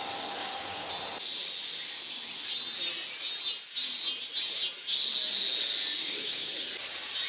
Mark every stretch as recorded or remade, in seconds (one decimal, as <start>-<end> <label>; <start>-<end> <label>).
0.0-0.4 recorded; 0.4-0.9 remade; 0.9-6.0 recorded; 6.0-6.5 remade; 6.5-7.3 recorded